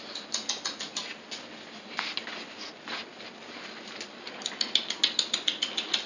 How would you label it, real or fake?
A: real